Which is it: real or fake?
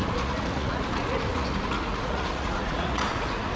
fake